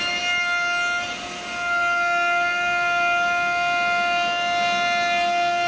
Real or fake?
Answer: real